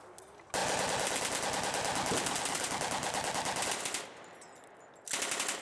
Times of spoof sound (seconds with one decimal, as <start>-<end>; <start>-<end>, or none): none